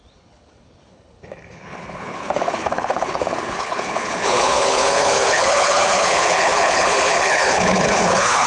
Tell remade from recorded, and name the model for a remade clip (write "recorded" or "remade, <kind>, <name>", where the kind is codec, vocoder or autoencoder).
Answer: remade, codec, HILCodec